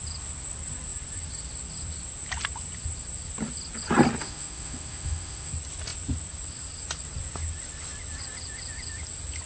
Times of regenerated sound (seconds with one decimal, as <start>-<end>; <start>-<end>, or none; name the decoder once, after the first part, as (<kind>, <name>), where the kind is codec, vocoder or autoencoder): 4.2-5.5 (autoencoder, DAC-VAE)